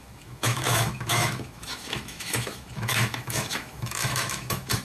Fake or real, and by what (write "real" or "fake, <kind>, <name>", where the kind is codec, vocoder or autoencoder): fake, autoencoder, DAC-VAE